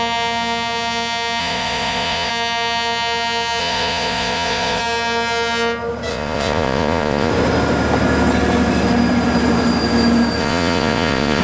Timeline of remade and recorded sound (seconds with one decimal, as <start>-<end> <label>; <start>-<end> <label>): 0.0-1.4 recorded; 1.4-2.3 remade; 2.3-3.6 recorded; 3.6-4.8 remade; 4.8-6.1 recorded; 6.1-7.3 remade; 7.3-10.4 recorded; 10.4-11.4 remade